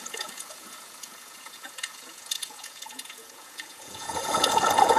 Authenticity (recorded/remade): remade